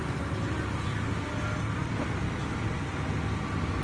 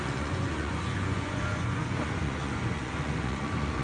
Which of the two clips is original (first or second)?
first